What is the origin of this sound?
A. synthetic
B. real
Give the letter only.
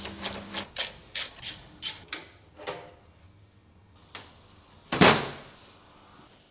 B